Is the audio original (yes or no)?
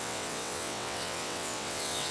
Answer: no